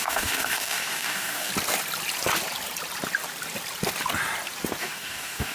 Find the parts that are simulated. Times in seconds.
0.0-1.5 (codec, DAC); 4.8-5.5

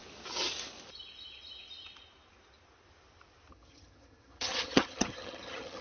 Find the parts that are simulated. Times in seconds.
3.5-5.8 (vocoder, HiFi-GAN)

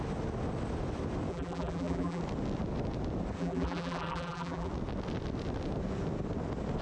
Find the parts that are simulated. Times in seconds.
1.3-2.2 (vocoder, BigVGAN v2); 3.4-4.7

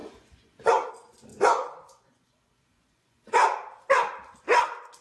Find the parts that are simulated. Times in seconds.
0.0-0.9 (vocoder, Vocos); 1.3-3.3

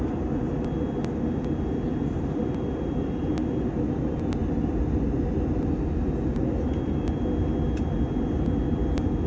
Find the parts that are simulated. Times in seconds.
none

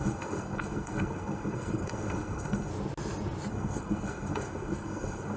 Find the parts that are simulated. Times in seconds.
0.0-2.7 (codec, SNAC); 3.5-5.4